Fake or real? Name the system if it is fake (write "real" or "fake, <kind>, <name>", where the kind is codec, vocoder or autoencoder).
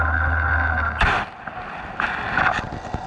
real